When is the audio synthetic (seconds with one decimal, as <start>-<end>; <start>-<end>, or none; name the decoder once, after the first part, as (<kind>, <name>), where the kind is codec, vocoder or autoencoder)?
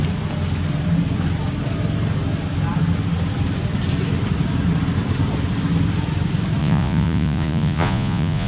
6.6-8.5 (vocoder, Vocos)